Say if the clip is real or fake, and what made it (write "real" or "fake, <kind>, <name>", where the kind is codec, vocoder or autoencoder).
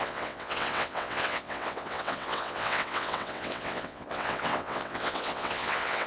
fake, vocoder, WaveNeXt